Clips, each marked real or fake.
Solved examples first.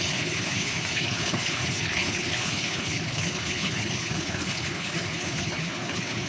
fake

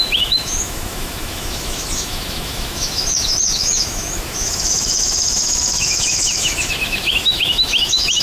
fake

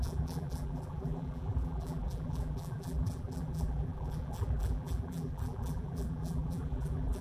fake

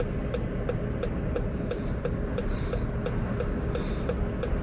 real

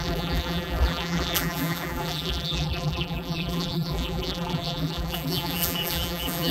fake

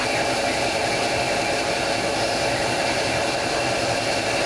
real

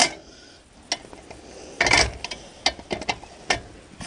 real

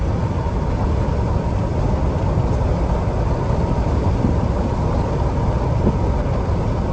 real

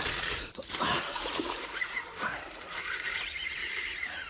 fake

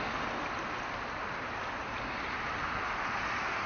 real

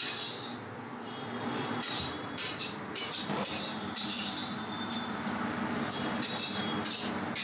fake